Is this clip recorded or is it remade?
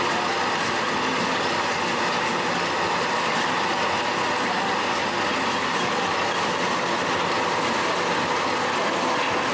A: recorded